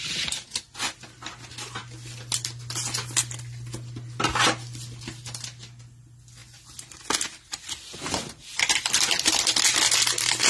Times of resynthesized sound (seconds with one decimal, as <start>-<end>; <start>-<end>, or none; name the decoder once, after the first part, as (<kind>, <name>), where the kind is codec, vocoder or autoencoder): none